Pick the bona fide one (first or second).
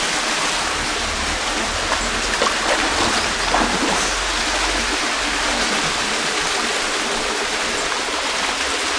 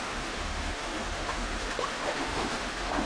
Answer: first